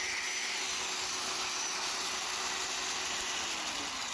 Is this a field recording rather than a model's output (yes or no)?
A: yes